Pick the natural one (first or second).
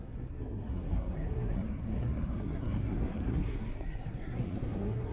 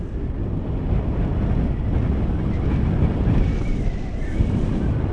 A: second